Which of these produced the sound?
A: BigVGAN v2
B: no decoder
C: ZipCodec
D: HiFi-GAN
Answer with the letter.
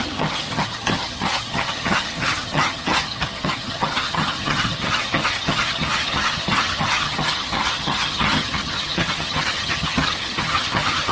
D